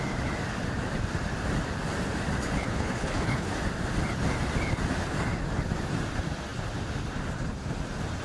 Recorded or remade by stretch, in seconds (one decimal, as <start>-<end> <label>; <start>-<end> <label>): 0.0-2.6 recorded; 2.6-3.5 remade; 3.5-8.2 recorded